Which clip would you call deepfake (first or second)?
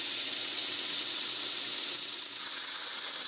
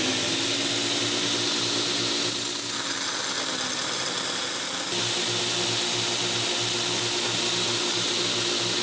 first